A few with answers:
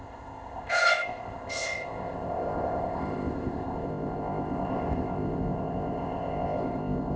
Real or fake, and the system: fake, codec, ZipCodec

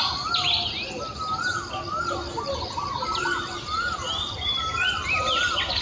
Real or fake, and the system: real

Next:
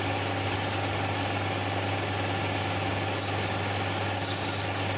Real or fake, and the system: real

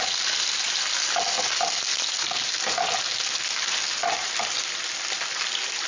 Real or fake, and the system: real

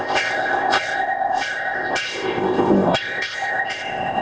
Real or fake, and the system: fake, codec, ZipCodec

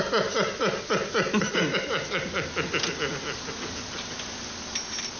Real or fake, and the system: real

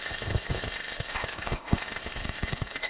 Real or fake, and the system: fake, codec, ZipCodec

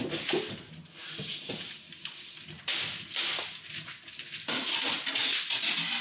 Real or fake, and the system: real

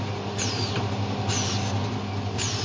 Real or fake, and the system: real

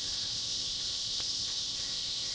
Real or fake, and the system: fake, codec, ZipCodec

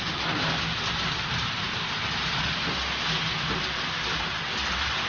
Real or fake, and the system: real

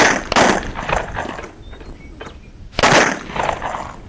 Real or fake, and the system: real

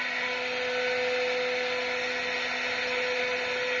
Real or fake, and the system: real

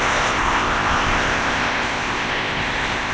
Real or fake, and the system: fake, codec, ZipCodec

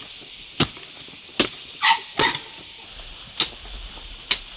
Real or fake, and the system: real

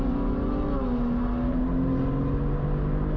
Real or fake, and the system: real